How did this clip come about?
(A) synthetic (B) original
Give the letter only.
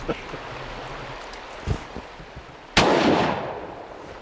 B